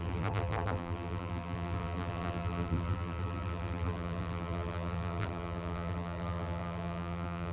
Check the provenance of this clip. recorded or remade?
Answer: remade